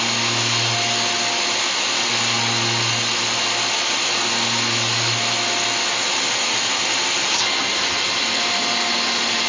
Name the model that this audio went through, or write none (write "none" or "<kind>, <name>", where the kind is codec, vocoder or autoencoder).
none